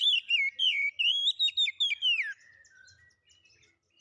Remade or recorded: recorded